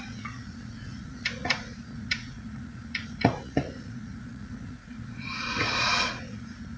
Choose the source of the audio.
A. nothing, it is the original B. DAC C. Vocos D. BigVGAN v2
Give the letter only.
C